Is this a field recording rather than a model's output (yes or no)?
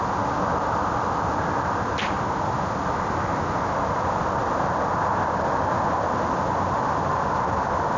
yes